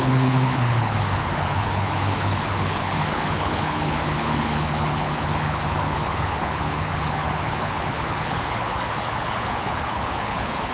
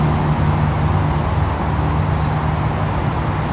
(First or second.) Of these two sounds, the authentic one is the second